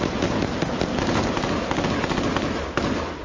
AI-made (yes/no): no